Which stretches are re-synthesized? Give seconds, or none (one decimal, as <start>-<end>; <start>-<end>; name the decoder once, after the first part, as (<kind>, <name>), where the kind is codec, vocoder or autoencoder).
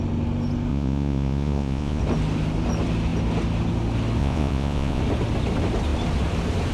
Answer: 0.7-2.0 (vocoder, Vocos); 4.2-5.0